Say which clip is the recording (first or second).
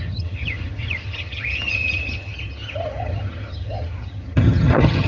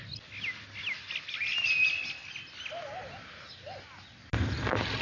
second